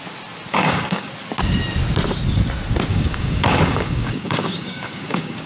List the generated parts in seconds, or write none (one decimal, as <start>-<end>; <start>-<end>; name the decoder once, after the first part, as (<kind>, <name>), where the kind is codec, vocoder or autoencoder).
0.5-1.1 (codec, DAC); 2.9-5.5